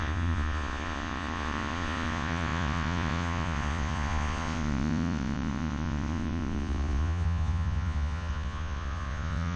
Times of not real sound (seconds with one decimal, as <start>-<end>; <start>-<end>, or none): 0.0-9.6